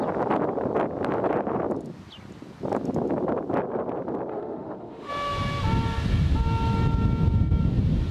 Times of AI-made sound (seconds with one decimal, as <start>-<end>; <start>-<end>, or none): 4.3-5.1